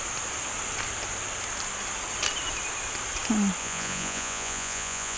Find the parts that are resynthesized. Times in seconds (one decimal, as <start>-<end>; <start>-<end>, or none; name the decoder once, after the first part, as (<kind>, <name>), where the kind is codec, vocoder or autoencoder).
3.6-5.2 (vocoder, Vocos)